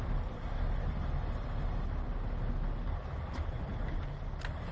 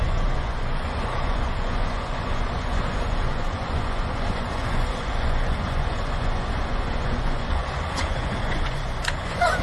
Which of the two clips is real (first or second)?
first